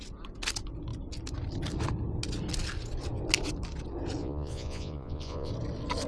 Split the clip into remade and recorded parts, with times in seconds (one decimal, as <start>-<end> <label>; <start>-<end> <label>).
0.0-4.2 recorded; 4.2-5.5 remade; 5.5-6.1 recorded